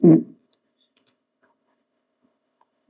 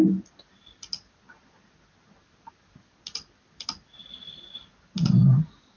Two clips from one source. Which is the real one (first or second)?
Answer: second